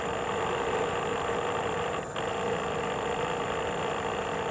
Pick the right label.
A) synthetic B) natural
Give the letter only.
B